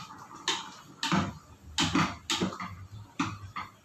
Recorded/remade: recorded